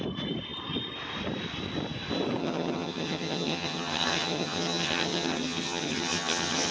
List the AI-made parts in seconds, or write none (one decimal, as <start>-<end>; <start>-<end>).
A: 2.4-6.7

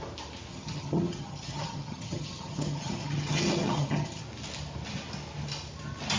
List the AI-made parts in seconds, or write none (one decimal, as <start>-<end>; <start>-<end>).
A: 0.5-4.2

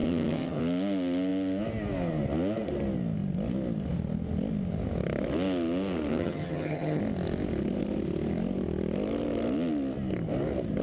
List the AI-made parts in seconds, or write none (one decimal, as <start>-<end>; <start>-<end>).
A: 0.0-0.6; 6.1-7.0

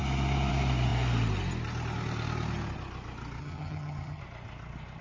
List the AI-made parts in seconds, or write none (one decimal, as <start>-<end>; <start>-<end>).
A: 3.4-4.2

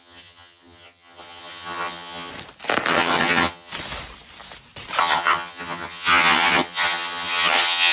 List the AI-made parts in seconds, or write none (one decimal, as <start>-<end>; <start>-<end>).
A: 0.0-2.3; 2.9-3.7; 5.0-7.9

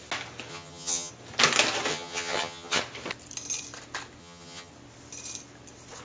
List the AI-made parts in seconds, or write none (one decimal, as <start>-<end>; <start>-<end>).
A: 0.5-1.1; 1.9-2.8; 4.2-4.7